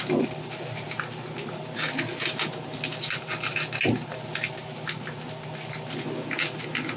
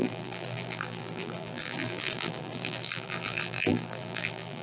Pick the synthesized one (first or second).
second